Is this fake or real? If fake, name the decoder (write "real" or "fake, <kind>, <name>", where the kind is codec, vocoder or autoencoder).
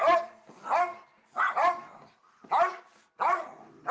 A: real